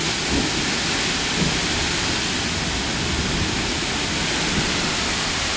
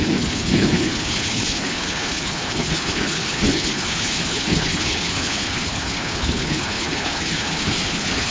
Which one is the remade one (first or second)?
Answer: second